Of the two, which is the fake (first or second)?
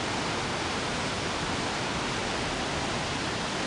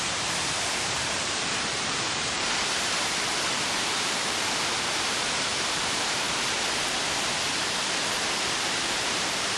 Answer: second